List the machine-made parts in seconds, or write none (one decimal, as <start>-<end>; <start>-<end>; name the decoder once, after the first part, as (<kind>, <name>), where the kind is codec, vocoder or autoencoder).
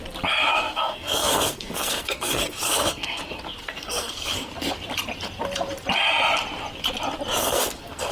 0.5-3.2 (codec, SNAC); 3.6-4.5; 7.4-8.1